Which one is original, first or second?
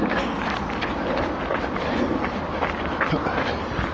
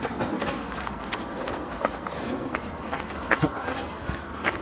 first